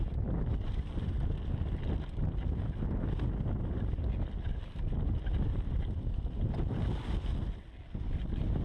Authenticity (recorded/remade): recorded